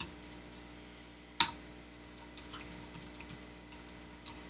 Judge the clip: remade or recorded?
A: recorded